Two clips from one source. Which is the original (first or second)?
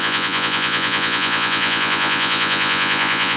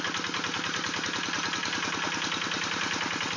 second